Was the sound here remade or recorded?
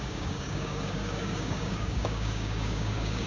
remade